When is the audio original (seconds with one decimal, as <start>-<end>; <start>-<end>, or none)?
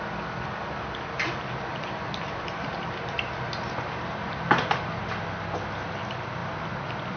0.0-1.7; 4.9-7.2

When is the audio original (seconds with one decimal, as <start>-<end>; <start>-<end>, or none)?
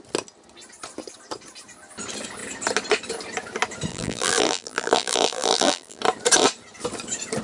0.0-3.9; 6.0-7.4